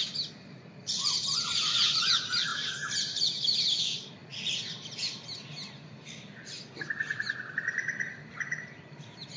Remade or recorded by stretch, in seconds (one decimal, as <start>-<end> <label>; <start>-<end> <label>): 0.0-4.2 remade; 4.2-7.5 recorded; 7.5-9.4 remade